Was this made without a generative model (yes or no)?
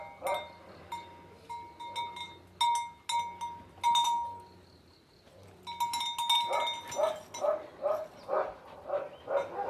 yes